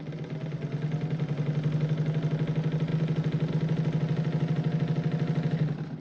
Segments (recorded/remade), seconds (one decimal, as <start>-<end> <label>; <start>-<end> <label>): 0.0-6.0 recorded